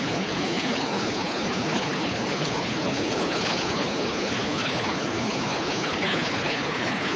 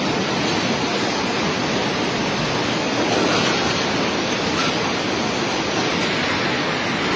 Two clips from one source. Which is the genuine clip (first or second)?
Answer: second